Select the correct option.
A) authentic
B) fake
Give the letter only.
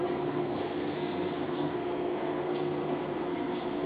B